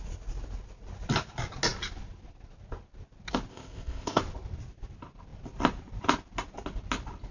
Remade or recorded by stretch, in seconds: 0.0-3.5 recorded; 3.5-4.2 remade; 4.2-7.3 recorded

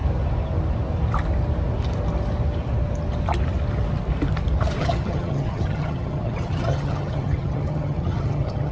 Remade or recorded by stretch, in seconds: 0.0-4.8 recorded; 4.8-8.7 remade

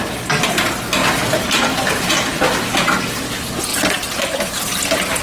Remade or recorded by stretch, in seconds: 0.0-3.7 recorded; 3.7-4.7 remade; 4.7-5.2 recorded

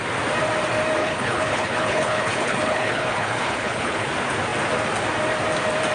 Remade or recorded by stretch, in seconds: 0.0-1.0 recorded; 1.0-4.1 remade; 4.1-5.9 recorded

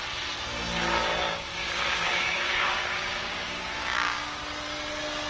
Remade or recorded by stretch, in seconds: 0.0-1.2 recorded; 1.2-4.4 remade; 4.4-5.3 recorded

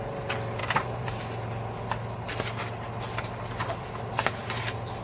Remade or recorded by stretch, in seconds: 0.0-0.6 recorded; 0.6-1.2 remade; 1.2-5.0 recorded

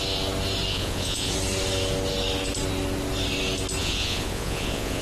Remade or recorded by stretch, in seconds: 0.0-0.7 recorded; 0.7-1.3 remade; 1.3-3.8 recorded; 3.8-5.0 remade

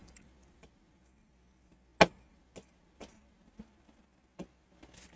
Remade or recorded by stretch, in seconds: 0.0-5.2 recorded